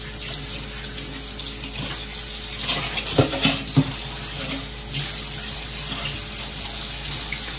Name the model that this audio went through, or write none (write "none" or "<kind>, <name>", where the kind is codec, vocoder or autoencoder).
none